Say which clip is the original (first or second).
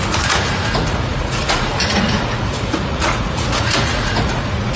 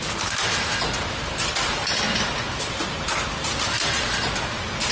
second